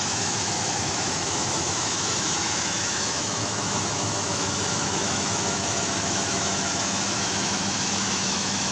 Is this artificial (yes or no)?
yes